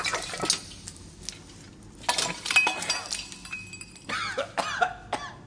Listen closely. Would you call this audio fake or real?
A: real